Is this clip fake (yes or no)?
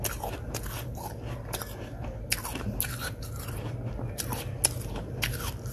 no